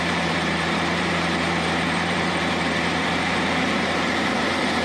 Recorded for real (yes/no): no